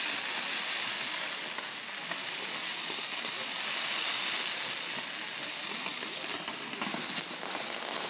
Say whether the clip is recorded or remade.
recorded